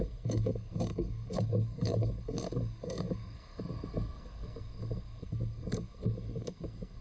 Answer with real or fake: fake